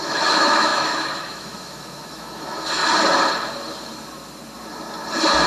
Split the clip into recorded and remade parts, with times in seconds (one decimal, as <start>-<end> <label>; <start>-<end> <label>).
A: 0.0-2.8 remade; 2.8-5.5 recorded